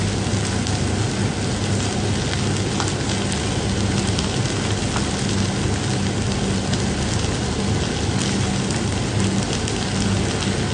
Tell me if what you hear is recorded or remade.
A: recorded